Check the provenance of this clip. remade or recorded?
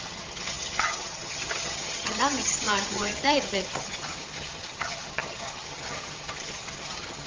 remade